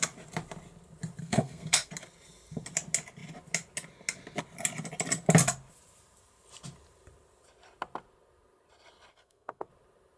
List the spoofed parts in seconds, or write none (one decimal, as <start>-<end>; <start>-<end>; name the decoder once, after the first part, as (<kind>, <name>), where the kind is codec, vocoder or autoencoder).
1.2-1.9 (codec, SNAC); 9.1-9.7